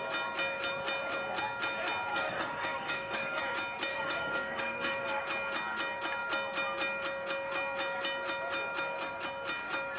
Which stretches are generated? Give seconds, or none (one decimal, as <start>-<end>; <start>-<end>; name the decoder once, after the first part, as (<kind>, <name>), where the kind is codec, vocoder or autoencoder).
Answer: 2.1-3.4 (codec, DAC); 3.9-5.2